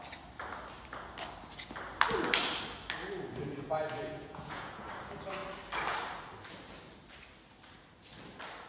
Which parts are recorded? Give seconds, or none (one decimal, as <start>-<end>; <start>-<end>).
0.0-3.4; 4.9-8.7